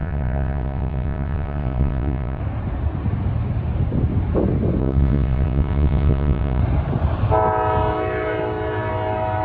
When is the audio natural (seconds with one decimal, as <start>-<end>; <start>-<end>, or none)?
2.4-4.8; 6.6-9.4